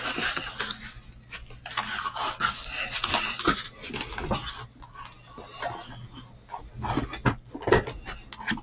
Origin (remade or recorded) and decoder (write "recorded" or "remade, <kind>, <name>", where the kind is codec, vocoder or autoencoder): recorded